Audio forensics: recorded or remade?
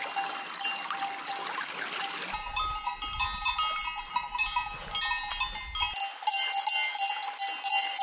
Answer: recorded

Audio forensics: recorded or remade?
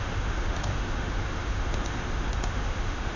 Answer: remade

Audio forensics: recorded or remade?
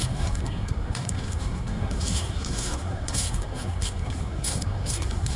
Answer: remade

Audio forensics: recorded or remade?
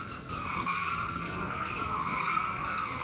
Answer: remade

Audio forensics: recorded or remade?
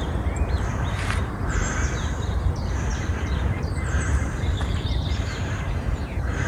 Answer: remade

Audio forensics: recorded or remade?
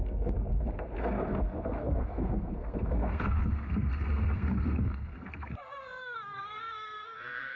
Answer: remade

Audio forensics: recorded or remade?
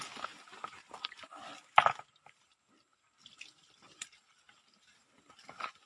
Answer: recorded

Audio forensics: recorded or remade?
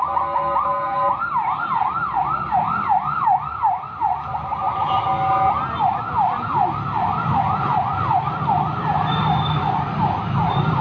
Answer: recorded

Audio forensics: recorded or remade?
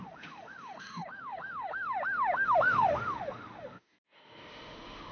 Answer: remade